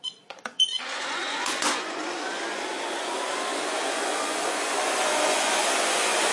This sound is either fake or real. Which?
fake